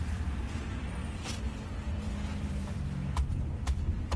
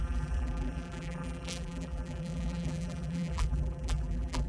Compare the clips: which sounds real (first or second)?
first